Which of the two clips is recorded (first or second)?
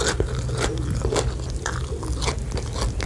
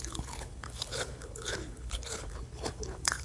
first